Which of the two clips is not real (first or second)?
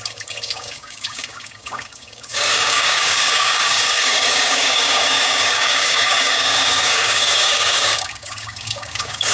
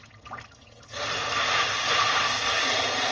first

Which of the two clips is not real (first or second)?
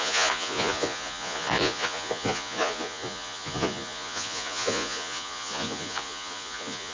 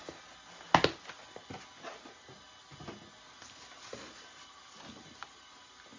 first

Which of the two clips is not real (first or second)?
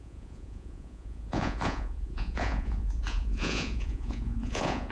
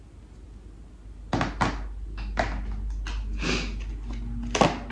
first